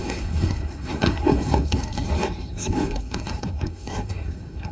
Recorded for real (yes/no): no